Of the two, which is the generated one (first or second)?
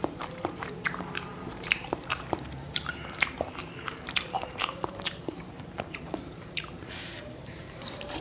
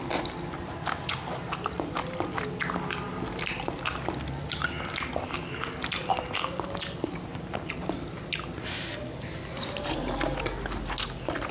first